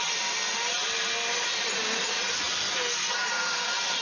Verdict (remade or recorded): recorded